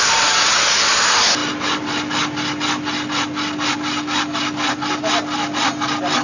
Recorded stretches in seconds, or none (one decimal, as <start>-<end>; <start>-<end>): 0.0-6.2